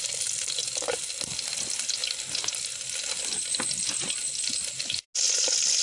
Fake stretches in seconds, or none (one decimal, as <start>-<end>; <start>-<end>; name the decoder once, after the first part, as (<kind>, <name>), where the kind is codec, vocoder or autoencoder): none